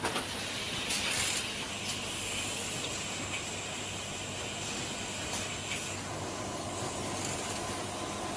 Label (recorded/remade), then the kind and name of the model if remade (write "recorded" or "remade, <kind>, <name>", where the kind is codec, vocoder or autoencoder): recorded